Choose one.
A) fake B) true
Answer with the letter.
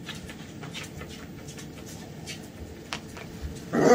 B